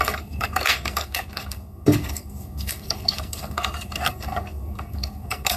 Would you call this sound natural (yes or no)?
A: no